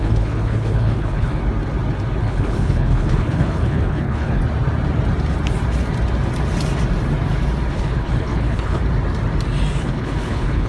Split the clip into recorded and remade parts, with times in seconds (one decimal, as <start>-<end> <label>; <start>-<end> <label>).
0.0-1.4 remade; 1.4-2.2 recorded; 2.2-4.4 remade; 4.4-7.7 recorded; 7.7-8.8 remade; 8.8-9.8 recorded; 9.8-10.7 remade